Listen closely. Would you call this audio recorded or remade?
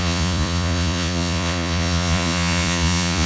remade